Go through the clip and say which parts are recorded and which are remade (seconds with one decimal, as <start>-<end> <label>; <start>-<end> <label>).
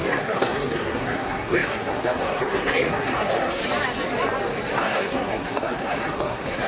0.0-3.6 remade; 3.6-4.8 recorded; 4.8-6.7 remade